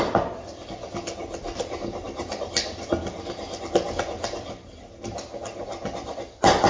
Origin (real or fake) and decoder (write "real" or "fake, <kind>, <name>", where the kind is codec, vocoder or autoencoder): real